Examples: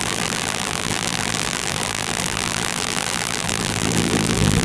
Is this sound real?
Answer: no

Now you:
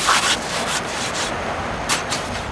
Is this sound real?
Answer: no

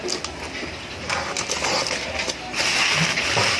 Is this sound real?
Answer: yes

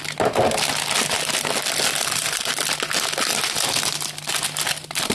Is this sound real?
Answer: yes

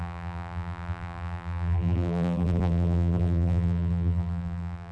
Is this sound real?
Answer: no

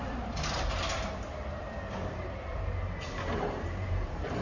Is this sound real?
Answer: no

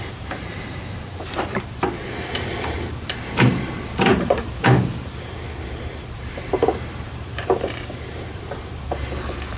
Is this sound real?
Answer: no